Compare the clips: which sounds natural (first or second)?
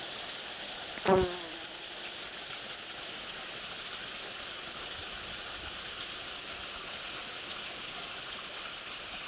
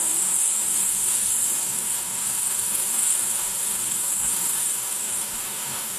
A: first